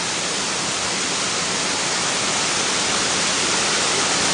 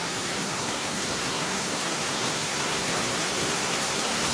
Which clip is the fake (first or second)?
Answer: second